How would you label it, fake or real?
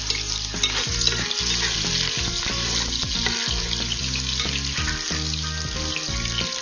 real